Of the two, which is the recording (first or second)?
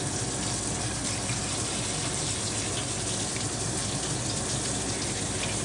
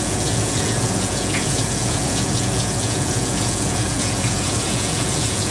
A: first